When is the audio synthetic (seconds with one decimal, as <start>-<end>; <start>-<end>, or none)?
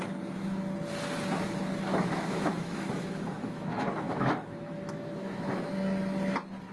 1.9-5.6